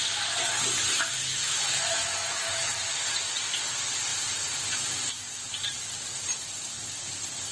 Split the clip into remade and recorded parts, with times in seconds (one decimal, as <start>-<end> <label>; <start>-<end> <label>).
0.0-1.2 recorded; 1.2-2.9 remade; 2.9-7.5 recorded